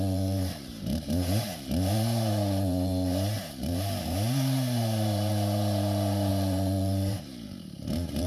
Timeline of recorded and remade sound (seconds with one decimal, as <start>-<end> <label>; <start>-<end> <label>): 0.0-8.3 remade